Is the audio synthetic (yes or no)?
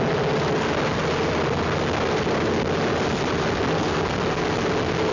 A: no